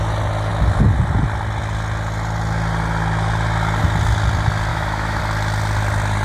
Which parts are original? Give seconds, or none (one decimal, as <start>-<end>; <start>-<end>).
0.0-4.7; 5.2-6.2